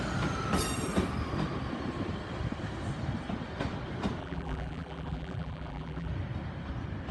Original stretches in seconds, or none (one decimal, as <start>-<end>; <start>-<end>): 0.0-4.2; 6.1-7.1